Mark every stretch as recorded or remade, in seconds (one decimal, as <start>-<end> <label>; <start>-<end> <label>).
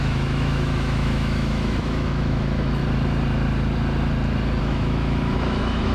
0.0-2.8 remade; 2.8-4.6 recorded; 4.6-5.9 remade